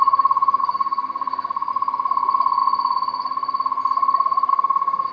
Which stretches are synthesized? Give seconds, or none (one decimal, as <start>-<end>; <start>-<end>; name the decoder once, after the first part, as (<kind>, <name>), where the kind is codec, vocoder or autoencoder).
0.6-1.7 (codec, SNAC); 4.5-5.1